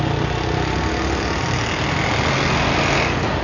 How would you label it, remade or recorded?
recorded